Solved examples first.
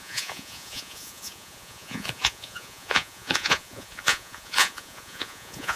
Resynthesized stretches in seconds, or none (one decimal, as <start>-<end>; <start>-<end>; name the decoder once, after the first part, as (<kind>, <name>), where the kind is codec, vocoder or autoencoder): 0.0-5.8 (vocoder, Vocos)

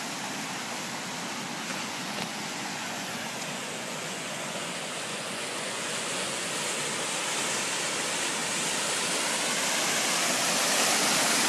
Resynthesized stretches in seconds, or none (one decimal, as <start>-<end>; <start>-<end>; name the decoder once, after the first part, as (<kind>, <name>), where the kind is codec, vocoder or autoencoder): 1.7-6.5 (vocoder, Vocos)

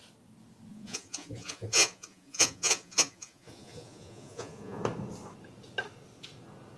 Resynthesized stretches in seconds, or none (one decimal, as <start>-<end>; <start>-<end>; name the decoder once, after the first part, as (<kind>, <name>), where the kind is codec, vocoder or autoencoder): 0.7-4.8 (vocoder, Vocos)

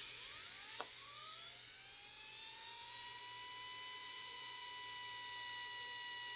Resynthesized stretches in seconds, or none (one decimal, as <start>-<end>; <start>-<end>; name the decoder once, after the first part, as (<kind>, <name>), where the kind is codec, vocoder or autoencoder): 0.0-3.2 (vocoder, Vocos); 4.0-4.7

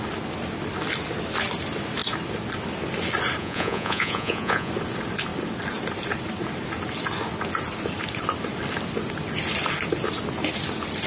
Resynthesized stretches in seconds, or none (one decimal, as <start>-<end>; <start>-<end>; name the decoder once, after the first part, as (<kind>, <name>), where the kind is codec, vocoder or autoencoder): 3.4-4.7 (vocoder, Vocos)